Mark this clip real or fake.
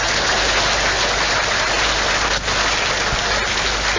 real